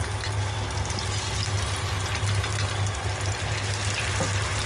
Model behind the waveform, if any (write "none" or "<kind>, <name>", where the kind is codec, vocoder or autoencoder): none